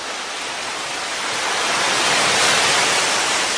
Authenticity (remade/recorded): recorded